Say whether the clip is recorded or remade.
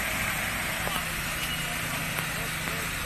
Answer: recorded